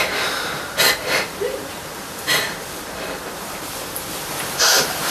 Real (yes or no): no